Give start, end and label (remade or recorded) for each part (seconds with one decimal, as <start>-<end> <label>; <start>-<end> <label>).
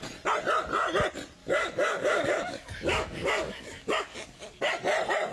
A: 0.0-1.4 recorded; 1.4-4.6 remade; 4.6-5.3 recorded